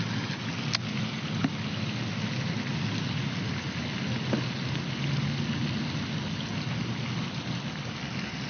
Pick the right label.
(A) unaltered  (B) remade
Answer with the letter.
A